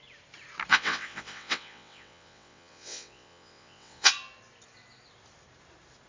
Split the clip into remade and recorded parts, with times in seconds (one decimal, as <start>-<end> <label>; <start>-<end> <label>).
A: 0.0-0.7 recorded; 0.7-4.1 remade; 4.1-6.1 recorded